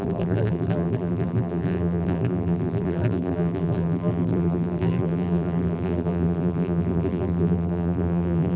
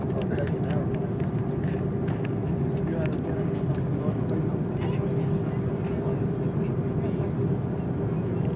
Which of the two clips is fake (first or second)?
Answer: first